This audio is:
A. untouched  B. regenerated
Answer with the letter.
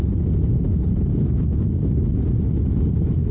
A